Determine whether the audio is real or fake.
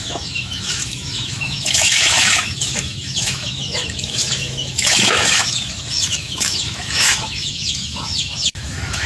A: fake